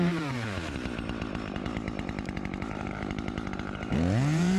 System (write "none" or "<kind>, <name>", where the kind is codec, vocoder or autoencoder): vocoder, BigVGAN v2